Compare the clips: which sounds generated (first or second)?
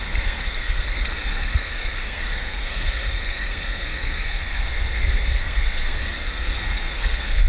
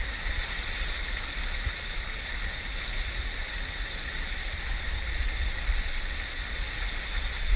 first